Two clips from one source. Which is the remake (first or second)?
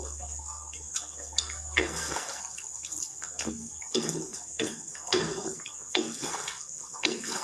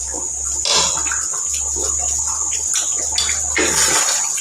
first